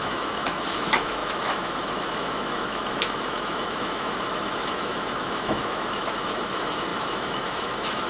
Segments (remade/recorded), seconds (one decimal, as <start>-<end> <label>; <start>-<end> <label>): 0.0-8.1 remade